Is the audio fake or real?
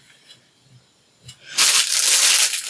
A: real